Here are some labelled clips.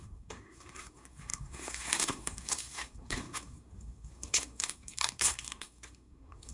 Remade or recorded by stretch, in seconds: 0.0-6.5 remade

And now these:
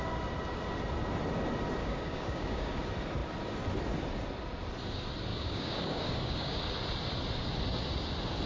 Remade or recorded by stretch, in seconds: 0.0-1.8 recorded; 1.8-2.8 remade; 2.8-5.3 recorded; 5.3-6.6 remade; 6.6-8.5 recorded

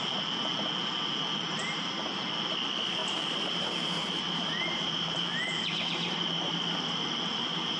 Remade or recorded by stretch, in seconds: 0.0-3.0 recorded; 3.0-7.8 remade

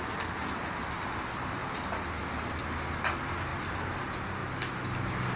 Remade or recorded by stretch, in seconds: 0.0-1.6 recorded; 1.6-2.6 remade; 2.6-4.4 recorded; 4.4-5.4 remade